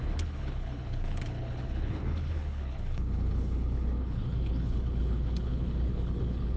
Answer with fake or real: fake